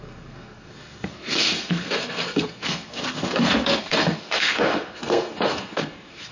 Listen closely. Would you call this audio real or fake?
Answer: fake